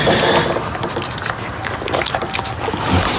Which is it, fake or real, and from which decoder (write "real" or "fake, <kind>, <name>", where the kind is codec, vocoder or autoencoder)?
real